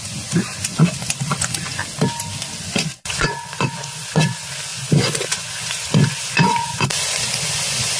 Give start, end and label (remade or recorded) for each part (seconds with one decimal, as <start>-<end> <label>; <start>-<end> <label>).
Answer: 0.0-1.8 remade; 1.8-2.6 recorded; 2.6-8.0 remade